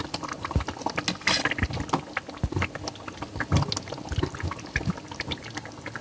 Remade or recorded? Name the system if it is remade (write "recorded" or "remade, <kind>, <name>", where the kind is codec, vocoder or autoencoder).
recorded